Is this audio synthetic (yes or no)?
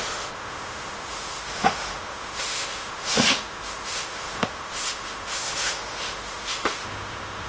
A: yes